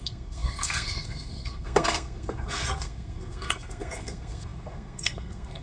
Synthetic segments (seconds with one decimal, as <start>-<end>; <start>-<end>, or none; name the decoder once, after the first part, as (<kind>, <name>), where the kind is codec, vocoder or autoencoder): 0.0-5.6 (codec, SNAC)